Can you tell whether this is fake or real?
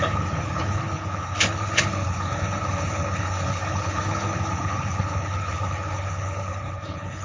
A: fake